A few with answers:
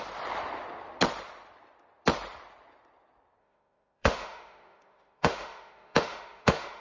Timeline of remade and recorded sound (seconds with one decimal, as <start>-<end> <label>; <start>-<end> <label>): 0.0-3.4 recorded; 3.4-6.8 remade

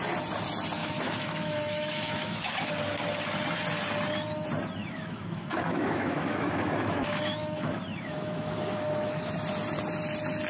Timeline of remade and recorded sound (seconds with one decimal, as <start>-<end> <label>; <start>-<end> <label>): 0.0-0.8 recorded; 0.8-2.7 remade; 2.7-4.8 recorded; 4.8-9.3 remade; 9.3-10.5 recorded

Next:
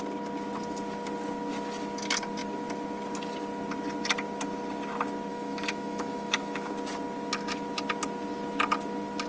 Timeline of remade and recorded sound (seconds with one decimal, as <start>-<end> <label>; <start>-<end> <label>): 0.0-5.3 recorded; 5.3-6.7 remade; 6.7-9.3 recorded